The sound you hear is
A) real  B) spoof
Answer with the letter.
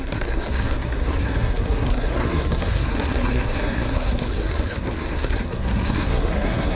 B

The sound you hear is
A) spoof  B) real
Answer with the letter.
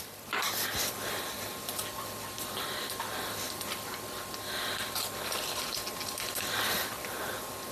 B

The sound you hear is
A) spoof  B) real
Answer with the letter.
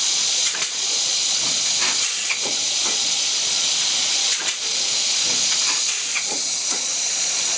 A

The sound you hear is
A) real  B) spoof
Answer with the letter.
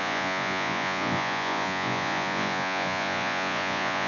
B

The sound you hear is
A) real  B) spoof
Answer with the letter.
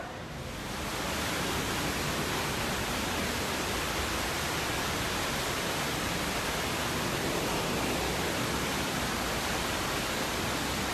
A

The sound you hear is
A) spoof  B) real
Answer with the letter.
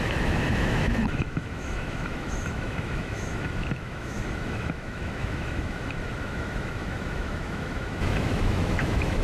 A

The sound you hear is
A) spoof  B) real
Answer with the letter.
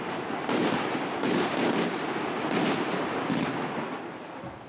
B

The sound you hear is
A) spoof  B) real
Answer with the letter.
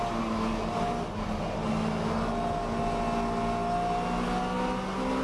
B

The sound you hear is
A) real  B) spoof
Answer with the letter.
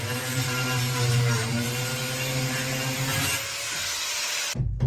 A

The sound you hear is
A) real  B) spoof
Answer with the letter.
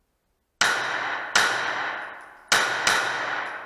A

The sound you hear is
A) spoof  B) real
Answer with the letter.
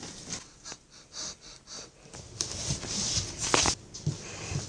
B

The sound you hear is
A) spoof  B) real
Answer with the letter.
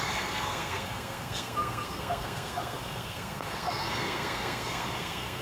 A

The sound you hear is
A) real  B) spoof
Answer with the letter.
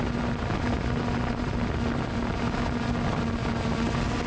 A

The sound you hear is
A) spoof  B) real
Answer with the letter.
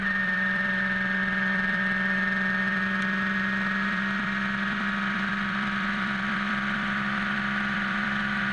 A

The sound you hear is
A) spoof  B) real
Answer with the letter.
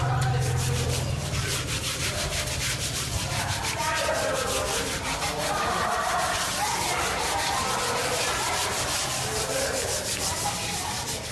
B